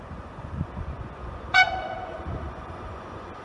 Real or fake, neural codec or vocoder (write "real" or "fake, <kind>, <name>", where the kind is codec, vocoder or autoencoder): fake, vocoder, Vocos